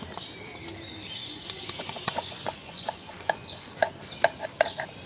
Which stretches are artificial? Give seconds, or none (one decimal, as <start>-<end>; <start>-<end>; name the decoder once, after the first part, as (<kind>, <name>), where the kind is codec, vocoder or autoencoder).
1.2-4.0 (vocoder, Vocos)

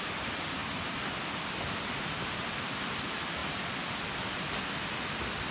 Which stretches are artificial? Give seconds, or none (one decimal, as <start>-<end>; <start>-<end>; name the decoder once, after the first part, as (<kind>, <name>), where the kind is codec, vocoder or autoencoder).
none

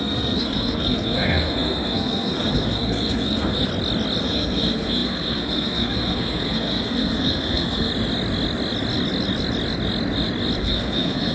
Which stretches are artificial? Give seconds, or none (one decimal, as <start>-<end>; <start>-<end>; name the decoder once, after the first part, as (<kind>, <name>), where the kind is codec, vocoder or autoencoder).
0.0-3.7 (codec, SNAC); 4.2-7.9; 10.6-11.3

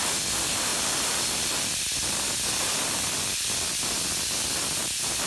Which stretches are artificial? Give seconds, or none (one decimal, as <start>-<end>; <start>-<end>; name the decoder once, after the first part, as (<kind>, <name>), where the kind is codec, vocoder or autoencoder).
none

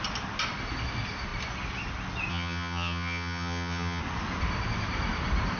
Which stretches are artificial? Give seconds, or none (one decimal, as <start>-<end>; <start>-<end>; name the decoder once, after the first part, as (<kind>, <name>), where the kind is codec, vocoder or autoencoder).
2.3-4.0 (vocoder, HiFi-GAN)